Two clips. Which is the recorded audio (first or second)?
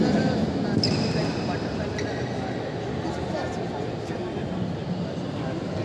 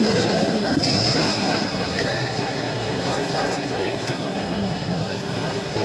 first